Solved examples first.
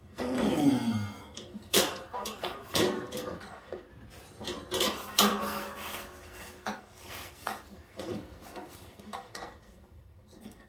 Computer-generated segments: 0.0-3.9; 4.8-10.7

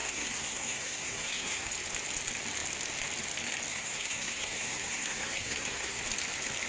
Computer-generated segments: 0.0-1.7; 3.7-6.0

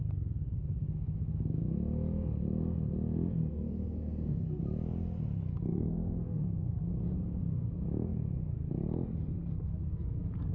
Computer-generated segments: 3.4-4.6; 5.7-6.7

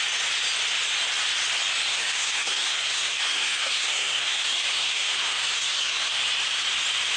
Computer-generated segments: 1.9-6.2

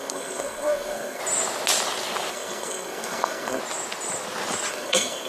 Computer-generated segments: 0.0-1.2; 2.3-3.6; 4.7-5.3

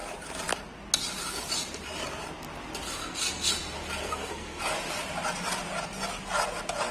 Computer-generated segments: 3.0-3.5; 4.0-4.6

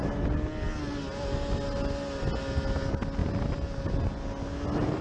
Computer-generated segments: none

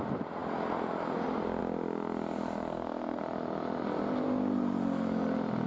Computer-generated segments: 2.7-3.2